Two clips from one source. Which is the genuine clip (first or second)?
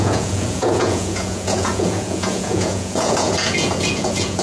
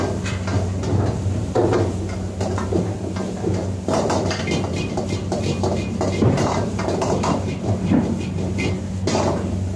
second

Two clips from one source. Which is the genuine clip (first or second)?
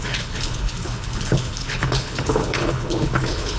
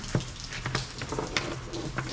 second